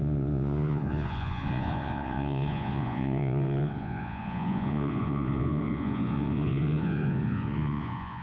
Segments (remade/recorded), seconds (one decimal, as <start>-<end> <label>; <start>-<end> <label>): 0.0-8.2 remade